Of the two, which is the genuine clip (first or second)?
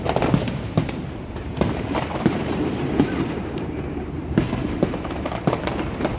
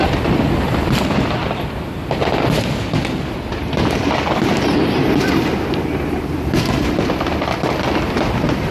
second